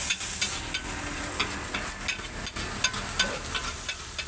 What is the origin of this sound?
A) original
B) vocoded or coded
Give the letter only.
A